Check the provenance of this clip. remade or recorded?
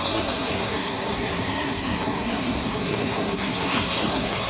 remade